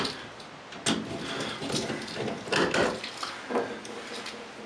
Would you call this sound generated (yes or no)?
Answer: no